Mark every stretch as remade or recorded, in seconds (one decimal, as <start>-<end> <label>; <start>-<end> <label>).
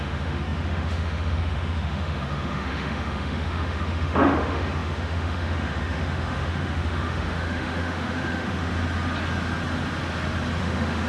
0.0-8.7 remade; 8.7-10.6 recorded; 10.6-11.1 remade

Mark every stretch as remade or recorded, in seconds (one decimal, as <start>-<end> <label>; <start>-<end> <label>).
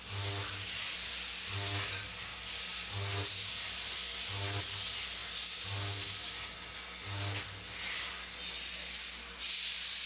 0.0-10.1 recorded